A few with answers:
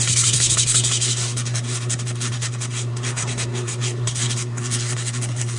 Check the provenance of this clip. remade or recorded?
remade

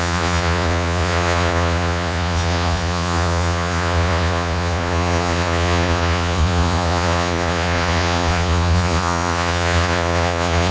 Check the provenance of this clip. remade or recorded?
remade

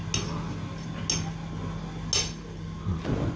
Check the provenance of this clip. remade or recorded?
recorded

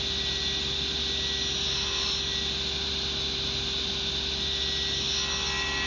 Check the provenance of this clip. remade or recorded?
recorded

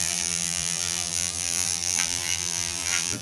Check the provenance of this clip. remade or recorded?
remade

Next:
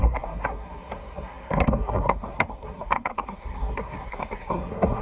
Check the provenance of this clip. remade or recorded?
remade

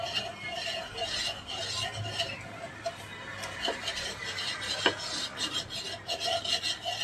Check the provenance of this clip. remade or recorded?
recorded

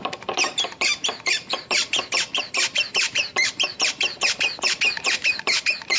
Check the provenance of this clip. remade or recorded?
remade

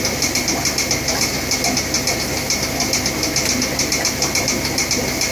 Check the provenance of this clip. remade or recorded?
recorded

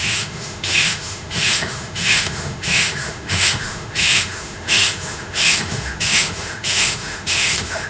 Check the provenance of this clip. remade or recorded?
remade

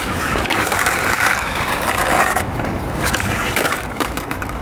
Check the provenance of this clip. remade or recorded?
remade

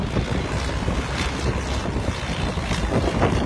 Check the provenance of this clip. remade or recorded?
recorded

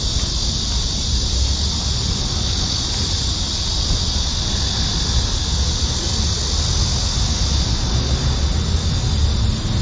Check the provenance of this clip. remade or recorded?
recorded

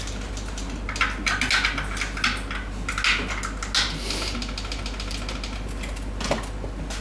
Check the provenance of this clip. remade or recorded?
recorded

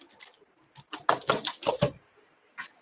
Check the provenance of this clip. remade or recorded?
recorded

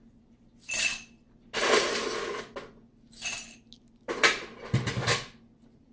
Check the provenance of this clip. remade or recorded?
recorded